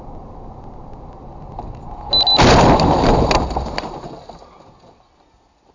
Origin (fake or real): real